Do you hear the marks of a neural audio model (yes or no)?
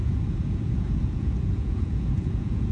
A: yes